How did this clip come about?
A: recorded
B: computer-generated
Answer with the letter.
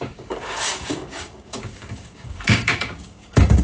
B